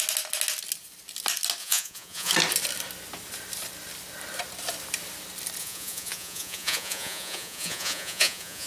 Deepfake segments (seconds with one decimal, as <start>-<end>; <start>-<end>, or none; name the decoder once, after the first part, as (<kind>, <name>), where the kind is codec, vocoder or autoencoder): 1.6-2.3 (vocoder, Vocos); 5.6-8.7